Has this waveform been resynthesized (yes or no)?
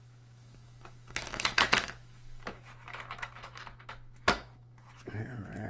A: yes